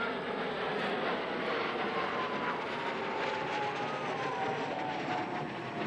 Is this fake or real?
real